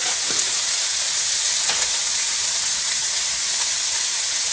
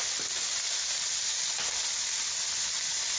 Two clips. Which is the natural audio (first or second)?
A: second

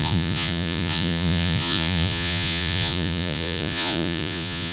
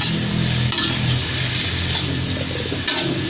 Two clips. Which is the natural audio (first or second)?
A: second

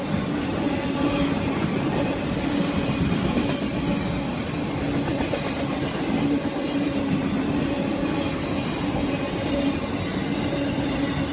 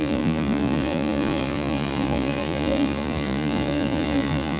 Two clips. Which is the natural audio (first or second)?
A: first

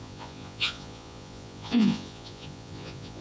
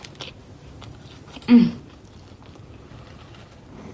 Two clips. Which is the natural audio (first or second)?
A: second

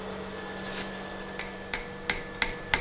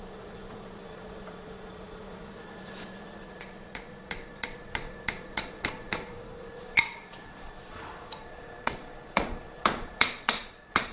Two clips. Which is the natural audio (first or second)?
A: first